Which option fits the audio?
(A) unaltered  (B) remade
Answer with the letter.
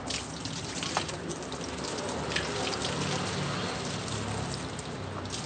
A